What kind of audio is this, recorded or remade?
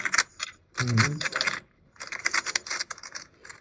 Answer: remade